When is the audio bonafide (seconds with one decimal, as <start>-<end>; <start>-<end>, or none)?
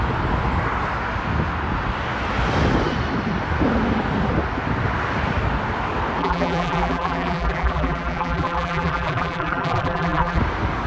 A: 0.0-6.2; 10.4-10.9